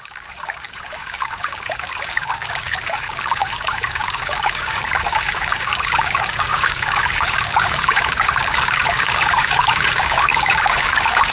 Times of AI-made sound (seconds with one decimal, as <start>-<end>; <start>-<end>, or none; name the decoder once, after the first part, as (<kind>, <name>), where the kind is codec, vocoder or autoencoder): 0.0-11.3 (codec, DAC)